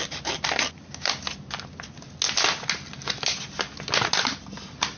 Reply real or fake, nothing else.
real